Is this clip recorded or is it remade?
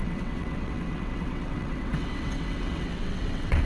remade